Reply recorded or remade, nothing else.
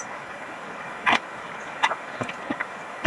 remade